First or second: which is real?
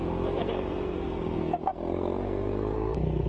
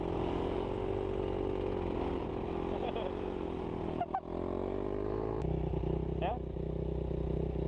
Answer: second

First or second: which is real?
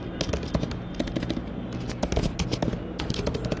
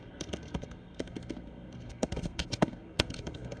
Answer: first